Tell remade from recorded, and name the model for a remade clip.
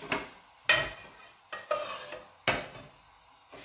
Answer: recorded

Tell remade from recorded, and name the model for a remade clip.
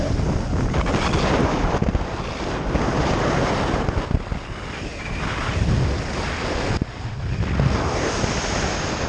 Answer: recorded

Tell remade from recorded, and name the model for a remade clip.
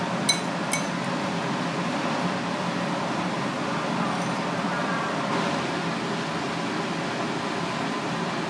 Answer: recorded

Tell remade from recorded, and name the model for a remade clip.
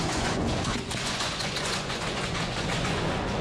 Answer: remade, vocoder, Vocos